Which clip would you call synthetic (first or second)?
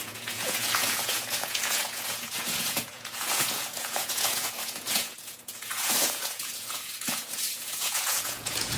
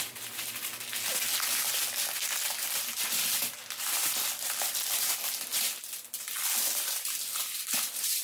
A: first